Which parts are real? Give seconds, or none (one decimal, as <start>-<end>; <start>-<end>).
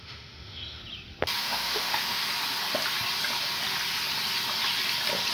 0.8-1.4; 2.2-5.3